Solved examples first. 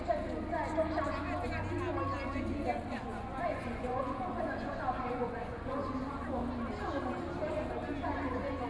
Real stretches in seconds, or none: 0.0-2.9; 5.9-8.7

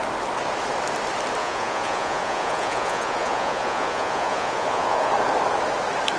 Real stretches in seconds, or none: 0.0-1.4; 5.1-6.2

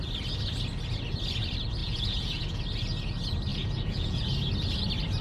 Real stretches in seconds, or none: 0.0-1.8; 2.6-3.5; 4.3-5.2

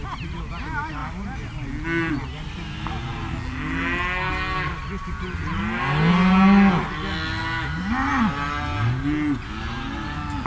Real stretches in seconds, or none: 0.0-10.5